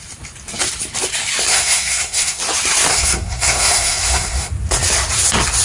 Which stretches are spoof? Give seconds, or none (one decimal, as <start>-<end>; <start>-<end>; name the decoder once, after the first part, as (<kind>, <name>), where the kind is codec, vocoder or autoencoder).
1.5-2.4 (codec, SNAC); 2.9-4.5